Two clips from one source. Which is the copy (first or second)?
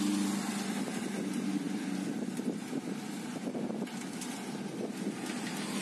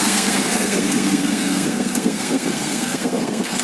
second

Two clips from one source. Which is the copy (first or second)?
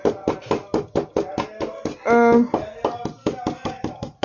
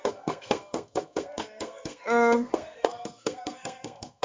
second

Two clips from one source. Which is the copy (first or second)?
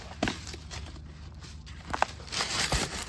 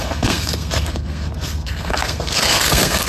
second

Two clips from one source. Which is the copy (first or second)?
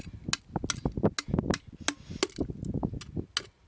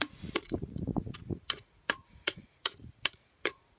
second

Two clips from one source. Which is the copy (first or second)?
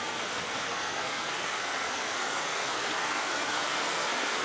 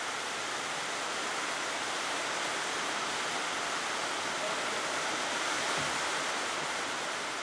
first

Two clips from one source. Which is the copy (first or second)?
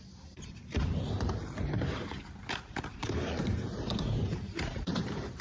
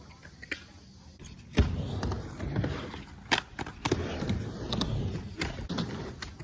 first